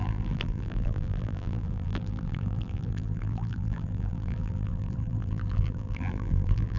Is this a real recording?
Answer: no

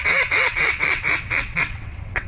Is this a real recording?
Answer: no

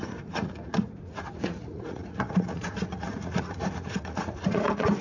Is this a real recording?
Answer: no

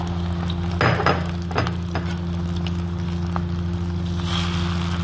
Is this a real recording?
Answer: yes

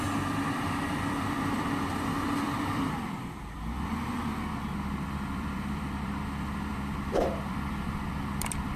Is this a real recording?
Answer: no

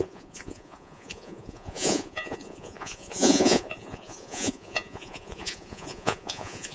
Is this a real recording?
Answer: no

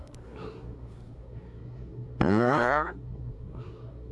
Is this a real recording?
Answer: no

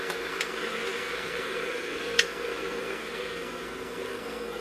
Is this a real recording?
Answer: no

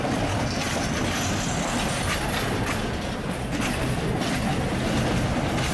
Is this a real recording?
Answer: yes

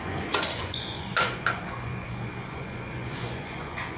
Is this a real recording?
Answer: no